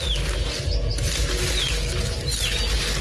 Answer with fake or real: real